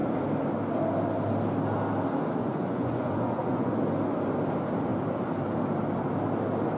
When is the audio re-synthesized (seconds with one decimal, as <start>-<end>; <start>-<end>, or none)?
2.4-3.8